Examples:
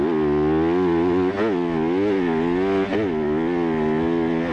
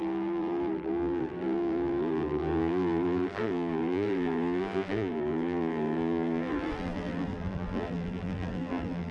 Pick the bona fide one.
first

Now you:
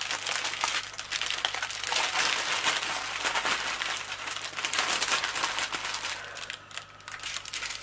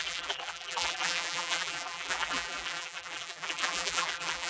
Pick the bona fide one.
first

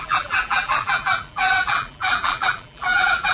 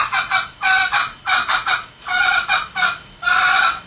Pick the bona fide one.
second